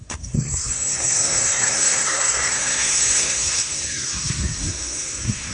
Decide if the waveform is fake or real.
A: fake